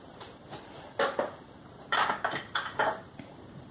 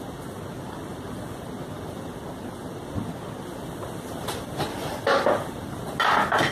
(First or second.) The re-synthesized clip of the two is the first